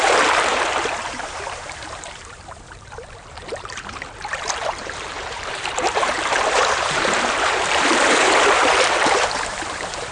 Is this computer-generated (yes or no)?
yes